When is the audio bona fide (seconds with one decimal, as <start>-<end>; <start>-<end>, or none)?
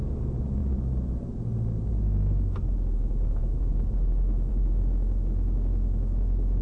0.0-6.6